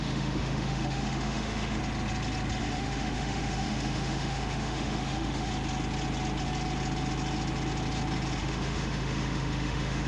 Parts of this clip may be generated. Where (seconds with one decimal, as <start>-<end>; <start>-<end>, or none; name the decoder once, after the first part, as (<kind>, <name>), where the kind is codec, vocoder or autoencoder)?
0.0-1.8 (autoencoder, DAC-VAE); 2.6-5.5; 8.4-10.1